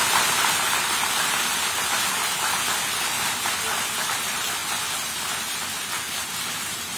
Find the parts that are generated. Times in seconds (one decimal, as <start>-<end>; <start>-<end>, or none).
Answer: none

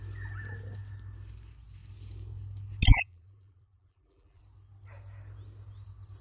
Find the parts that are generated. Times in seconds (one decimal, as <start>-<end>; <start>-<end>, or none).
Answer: 2.9-4.4

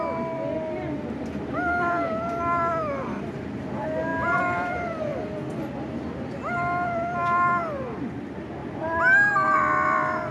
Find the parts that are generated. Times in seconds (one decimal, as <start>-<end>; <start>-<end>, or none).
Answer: 4.1-5.4